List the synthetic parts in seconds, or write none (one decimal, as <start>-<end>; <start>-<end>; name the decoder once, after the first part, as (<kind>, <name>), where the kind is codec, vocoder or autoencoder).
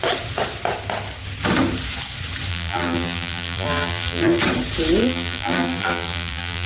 2.5-4.4 (vocoder, BigVGAN v2); 5.0-6.7